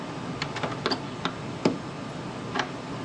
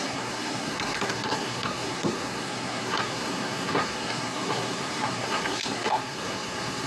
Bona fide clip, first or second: first